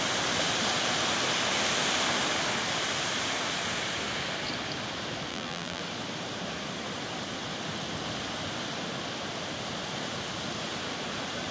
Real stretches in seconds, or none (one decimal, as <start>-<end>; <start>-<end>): 0.0-5.3; 5.8-11.5